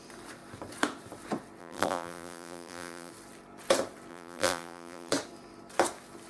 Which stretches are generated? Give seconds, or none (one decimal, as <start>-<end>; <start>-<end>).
1.6-3.1; 4.1-5.1